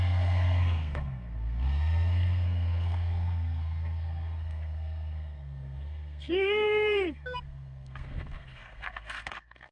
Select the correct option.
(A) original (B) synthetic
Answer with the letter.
B